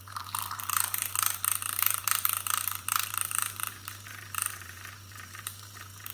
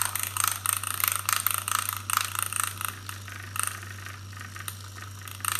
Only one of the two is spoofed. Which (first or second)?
first